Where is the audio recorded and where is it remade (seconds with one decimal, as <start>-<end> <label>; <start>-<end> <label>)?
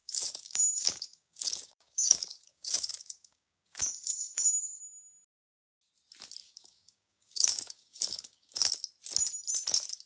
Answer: 0.0-4.8 remade; 4.8-6.4 recorded; 6.4-8.7 remade; 8.7-10.1 recorded